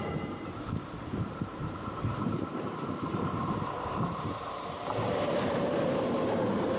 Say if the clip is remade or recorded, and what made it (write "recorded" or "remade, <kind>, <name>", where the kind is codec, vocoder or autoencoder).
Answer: remade, vocoder, BigVGAN v2